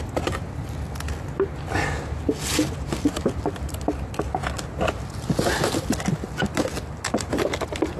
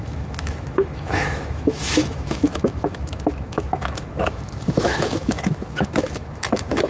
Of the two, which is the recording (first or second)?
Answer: first